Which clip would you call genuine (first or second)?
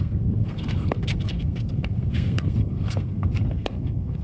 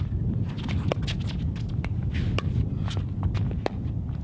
second